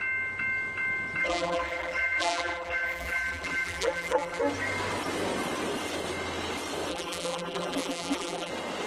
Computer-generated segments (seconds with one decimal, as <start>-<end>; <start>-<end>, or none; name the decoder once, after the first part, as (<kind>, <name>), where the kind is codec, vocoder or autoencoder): 1.2-4.4 (vocoder, BigVGAN v2); 6.9-8.5